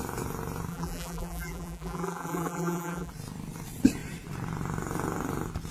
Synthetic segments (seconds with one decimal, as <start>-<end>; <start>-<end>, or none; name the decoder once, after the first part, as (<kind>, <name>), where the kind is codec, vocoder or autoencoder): 0.7-3.1 (vocoder, BigVGAN v2)